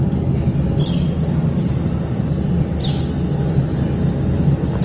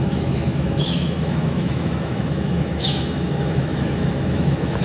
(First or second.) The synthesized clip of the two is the second